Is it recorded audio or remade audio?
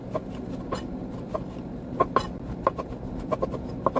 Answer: recorded